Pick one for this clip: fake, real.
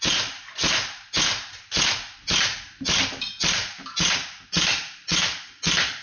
real